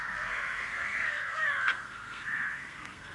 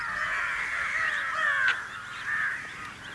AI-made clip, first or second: first